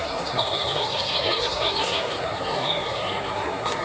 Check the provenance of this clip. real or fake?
fake